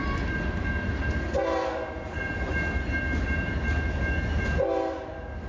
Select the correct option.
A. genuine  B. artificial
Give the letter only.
A